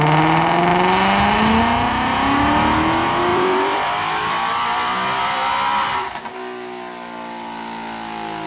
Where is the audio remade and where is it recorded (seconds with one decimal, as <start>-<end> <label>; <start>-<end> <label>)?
0.0-3.3 recorded; 3.3-6.2 remade; 6.2-8.5 recorded